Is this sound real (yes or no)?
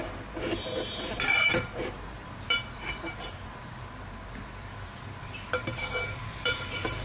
no